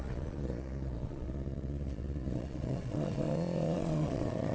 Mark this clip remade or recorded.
remade